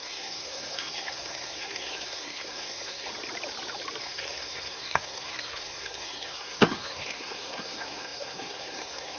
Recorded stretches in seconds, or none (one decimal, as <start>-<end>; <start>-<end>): 3.1-4.0